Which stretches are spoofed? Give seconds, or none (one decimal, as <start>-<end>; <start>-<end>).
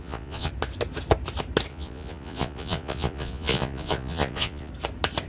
0.0-0.5; 1.7-4.7